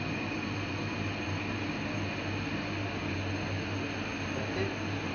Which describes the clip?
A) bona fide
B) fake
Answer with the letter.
A